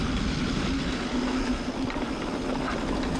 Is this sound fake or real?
real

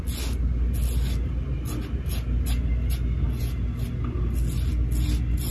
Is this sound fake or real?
real